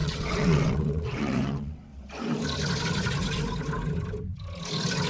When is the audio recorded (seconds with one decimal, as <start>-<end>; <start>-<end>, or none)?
1.9-5.1